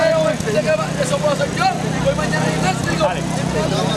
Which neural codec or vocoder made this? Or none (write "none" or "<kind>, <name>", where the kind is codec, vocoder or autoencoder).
none